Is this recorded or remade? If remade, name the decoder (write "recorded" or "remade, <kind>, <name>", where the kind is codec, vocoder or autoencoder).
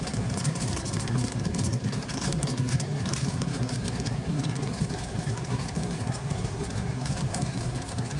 remade, codec, SNAC